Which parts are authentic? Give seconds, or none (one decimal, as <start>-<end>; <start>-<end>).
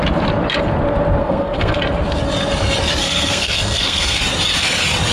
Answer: 0.0-1.2; 1.8-3.0; 4.2-5.1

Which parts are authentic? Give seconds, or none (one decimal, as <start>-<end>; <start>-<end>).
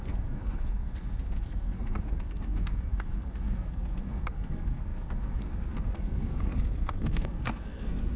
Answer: none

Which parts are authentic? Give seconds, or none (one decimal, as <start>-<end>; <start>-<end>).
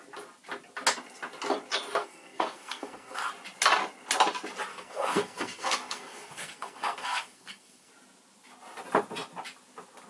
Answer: 0.0-2.0; 3.3-4.7; 7.9-10.1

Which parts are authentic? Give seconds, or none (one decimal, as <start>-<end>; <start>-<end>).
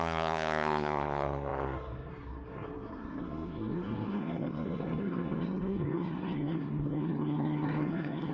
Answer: none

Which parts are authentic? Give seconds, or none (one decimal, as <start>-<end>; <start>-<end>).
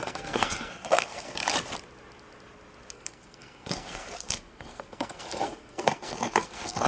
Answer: 1.4-2.9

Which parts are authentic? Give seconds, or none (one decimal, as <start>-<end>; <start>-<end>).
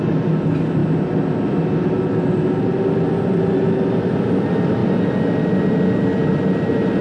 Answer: 0.0-7.0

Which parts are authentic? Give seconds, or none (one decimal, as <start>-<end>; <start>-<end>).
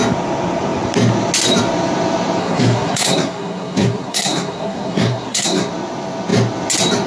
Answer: 0.0-2.4; 5.7-7.1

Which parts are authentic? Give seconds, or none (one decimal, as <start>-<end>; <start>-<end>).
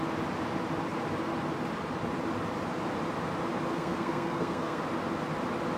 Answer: 0.0-3.7; 4.8-5.8